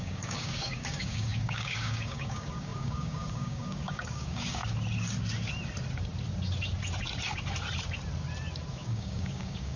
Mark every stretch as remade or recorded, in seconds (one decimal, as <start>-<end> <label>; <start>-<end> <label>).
0.0-4.6 remade; 4.6-8.7 recorded; 8.7-9.8 remade